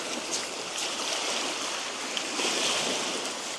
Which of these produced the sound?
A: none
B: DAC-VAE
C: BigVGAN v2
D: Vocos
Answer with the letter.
A